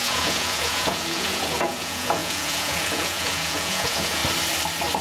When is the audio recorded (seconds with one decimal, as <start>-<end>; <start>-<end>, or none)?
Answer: 4.2-5.0